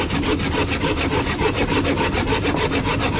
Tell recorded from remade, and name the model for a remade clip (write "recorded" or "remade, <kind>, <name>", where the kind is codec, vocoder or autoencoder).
recorded